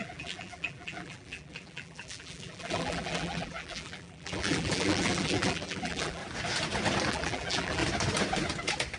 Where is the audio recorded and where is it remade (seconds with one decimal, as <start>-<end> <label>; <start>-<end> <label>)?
0.0-6.2 remade; 6.2-7.1 recorded; 7.1-7.8 remade; 7.8-9.0 recorded